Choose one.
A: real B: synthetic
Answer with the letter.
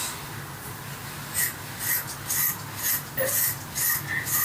A